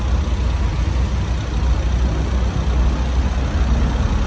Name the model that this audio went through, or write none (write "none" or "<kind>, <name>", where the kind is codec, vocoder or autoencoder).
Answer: none